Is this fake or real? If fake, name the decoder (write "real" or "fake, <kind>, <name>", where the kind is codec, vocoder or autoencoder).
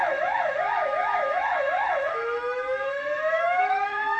fake, autoencoder, DAC-VAE